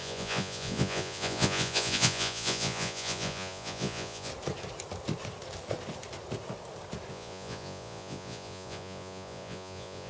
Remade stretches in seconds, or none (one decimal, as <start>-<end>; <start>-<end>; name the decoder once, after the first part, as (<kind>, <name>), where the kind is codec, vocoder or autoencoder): 0.0-4.3 (vocoder, Vocos); 7.1-10.1